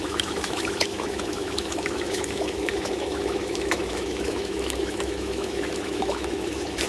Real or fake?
fake